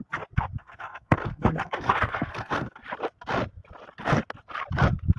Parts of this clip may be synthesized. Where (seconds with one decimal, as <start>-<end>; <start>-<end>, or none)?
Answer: 0.6-2.8